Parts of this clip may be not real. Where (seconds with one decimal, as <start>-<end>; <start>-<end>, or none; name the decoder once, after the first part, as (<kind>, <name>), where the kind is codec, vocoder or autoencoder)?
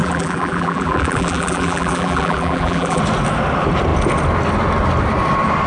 0.0-3.0 (vocoder, BigVGAN v2)